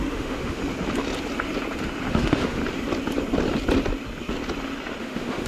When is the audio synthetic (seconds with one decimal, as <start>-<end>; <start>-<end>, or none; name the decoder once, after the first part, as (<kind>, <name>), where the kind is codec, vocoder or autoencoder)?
0.0-0.6 (autoencoder, DAC-VAE); 2.1-2.6; 5.0-5.5